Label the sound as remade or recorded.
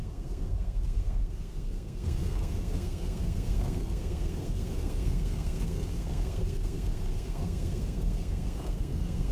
remade